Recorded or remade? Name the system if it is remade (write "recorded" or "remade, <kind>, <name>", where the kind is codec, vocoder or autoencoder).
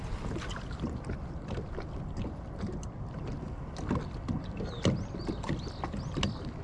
recorded